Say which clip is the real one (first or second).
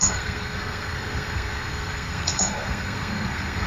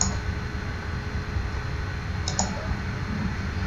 second